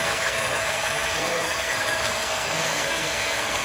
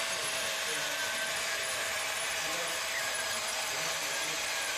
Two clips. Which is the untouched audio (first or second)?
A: second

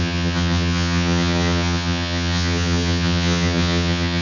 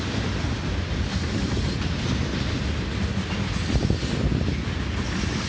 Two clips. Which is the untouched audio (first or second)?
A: second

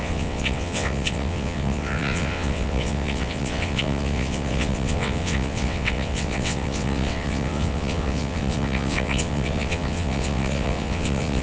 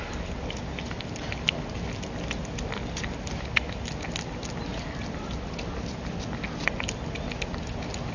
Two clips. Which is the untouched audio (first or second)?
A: second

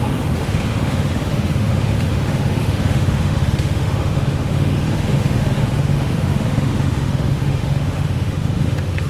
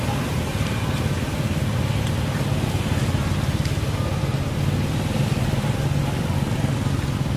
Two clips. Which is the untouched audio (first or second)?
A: second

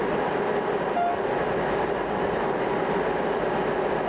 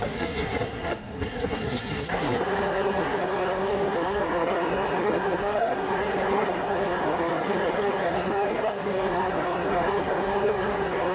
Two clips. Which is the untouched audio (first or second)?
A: first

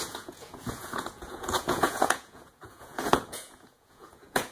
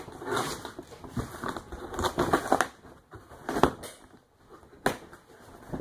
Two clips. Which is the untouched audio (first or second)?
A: second